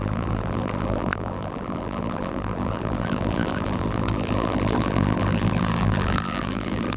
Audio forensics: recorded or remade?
remade